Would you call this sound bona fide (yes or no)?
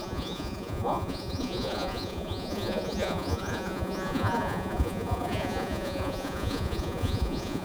no